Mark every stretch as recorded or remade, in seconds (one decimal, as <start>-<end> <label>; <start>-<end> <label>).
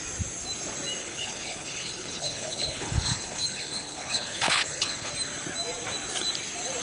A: 0.0-1.0 recorded; 1.0-5.1 remade; 5.1-6.8 recorded